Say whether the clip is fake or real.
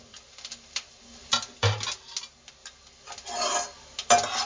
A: real